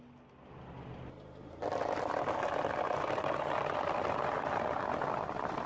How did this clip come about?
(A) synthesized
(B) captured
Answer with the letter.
A